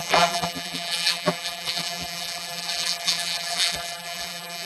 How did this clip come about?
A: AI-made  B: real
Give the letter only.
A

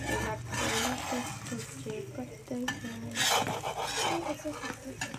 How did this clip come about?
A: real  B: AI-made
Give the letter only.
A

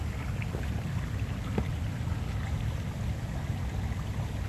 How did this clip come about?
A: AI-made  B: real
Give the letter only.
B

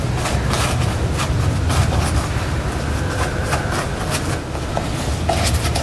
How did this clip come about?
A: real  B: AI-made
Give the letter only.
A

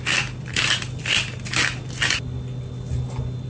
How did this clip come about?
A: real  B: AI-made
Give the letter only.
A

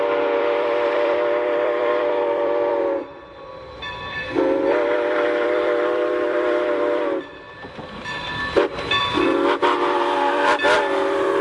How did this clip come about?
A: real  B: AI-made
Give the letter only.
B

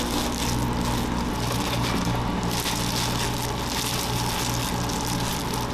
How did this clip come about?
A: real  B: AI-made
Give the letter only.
A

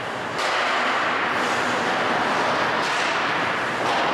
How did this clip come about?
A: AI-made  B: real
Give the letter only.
B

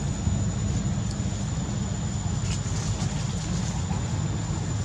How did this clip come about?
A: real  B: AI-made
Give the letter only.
A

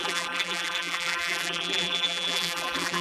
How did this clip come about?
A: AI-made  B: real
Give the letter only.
A